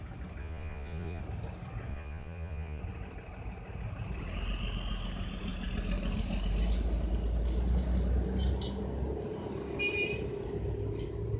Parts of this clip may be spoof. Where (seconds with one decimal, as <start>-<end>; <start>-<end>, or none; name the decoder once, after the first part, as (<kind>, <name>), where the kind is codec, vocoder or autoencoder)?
0.4-1.2 (vocoder, Vocos); 1.9-2.8